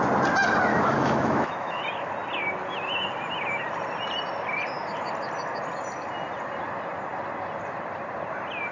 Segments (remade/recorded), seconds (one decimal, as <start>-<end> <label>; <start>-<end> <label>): 0.0-0.7 recorded; 0.7-1.8 remade; 1.8-8.7 recorded